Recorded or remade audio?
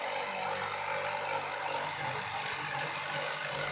recorded